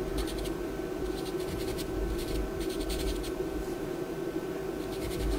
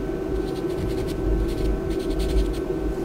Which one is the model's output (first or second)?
first